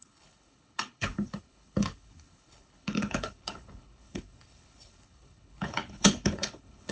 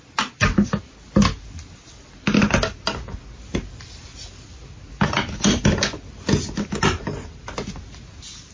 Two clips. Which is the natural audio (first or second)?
second